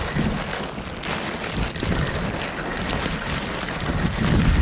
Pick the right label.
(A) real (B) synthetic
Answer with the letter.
A